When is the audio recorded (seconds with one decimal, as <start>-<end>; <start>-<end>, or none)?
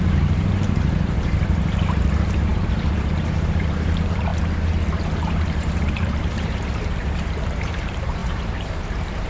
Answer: 4.3-5.2